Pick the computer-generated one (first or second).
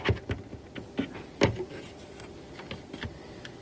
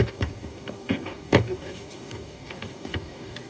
second